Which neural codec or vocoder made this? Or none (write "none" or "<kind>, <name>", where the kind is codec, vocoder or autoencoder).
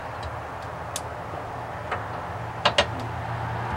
none